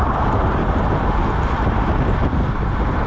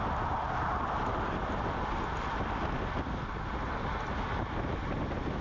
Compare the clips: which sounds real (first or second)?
second